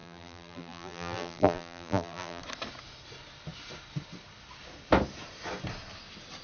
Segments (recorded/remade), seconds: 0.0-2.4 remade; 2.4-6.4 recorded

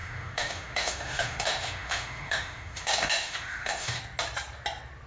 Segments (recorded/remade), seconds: 0.0-4.0 remade; 4.0-5.1 recorded